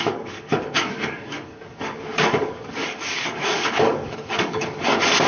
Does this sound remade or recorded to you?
remade